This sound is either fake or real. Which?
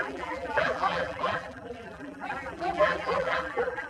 fake